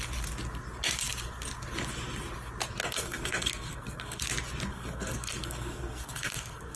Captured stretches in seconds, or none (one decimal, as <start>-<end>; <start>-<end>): 0.0-2.8; 4.2-4.7